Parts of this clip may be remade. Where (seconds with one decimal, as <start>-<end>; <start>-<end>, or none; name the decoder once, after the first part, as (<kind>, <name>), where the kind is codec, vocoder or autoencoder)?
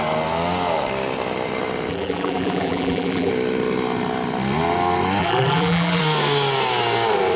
1.9-3.3 (vocoder, BigVGAN v2); 5.2-6.0